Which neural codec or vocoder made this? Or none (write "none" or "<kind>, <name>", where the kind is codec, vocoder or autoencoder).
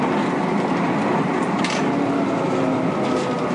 none